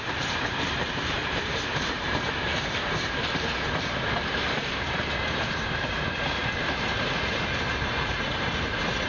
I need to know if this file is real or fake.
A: fake